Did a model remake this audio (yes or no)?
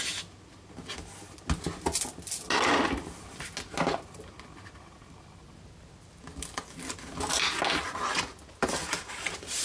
no